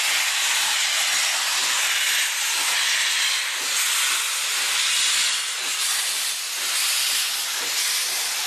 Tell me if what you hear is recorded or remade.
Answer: recorded